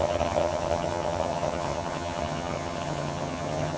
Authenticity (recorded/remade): remade